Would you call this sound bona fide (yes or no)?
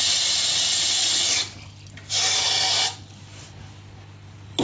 yes